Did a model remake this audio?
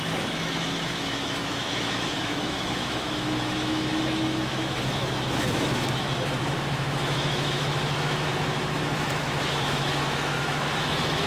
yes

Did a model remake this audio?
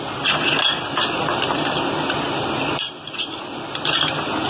no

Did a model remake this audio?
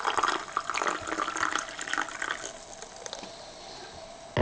no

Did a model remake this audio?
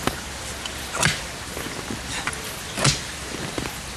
no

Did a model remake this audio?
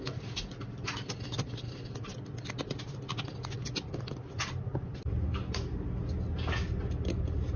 no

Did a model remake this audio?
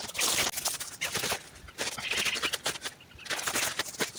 no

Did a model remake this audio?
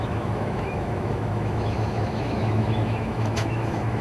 yes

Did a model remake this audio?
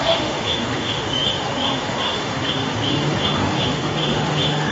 yes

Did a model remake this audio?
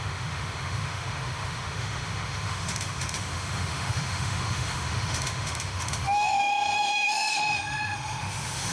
yes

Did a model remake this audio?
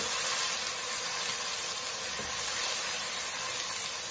no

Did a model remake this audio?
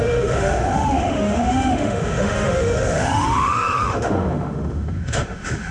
yes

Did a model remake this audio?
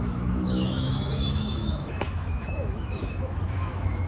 yes